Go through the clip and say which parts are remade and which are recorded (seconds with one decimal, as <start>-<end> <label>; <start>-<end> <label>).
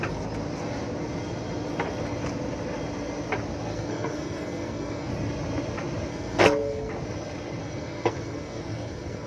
0.0-3.7 recorded; 3.7-5.1 remade; 5.1-6.1 recorded; 6.1-6.9 remade; 6.9-7.6 recorded; 7.6-9.3 remade